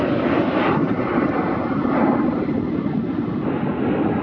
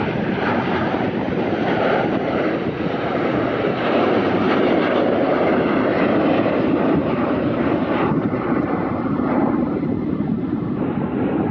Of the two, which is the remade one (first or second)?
second